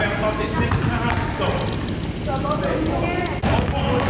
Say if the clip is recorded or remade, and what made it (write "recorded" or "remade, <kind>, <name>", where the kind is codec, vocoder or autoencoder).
recorded